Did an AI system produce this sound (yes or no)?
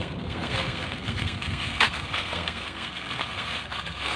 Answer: yes